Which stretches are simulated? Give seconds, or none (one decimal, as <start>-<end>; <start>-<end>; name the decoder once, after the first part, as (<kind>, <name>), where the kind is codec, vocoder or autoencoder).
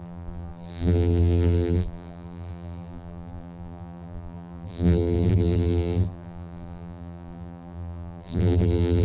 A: 0.0-9.0 (vocoder, BigVGAN v2)